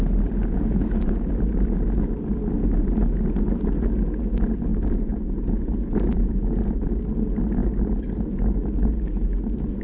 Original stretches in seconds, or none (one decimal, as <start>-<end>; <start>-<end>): 0.0-0.4; 1.3-4.7; 7.0-9.8